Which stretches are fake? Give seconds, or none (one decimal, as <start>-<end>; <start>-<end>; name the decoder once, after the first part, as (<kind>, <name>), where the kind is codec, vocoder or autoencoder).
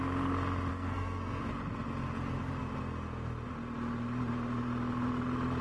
0.7-1.4 (codec, SNAC)